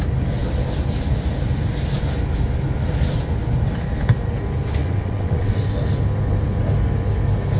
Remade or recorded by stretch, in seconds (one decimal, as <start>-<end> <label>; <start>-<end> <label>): 0.0-4.8 recorded; 4.8-5.5 remade; 5.5-7.6 recorded

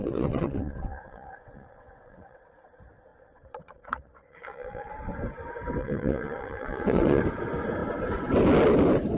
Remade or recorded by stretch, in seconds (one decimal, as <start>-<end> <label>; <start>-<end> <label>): 0.0-2.4 remade; 2.4-3.1 recorded; 3.1-4.9 remade; 4.9-5.8 recorded; 5.8-7.2 remade; 7.2-9.2 recorded